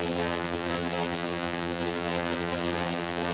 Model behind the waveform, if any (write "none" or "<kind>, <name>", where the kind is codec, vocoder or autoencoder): vocoder, BigVGAN v2